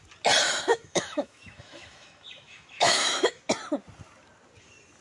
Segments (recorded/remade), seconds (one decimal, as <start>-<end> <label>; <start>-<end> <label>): 0.0-0.7 recorded; 0.7-3.4 remade; 3.4-5.0 recorded